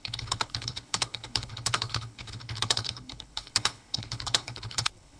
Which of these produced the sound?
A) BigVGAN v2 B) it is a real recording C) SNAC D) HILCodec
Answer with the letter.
D